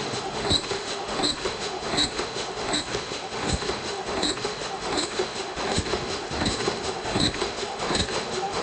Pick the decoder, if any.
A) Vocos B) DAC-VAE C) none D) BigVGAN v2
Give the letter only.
B